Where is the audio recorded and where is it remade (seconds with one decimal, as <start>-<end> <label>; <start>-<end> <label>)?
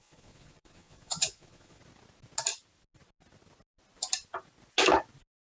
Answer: 0.0-1.8 remade; 1.8-5.4 recorded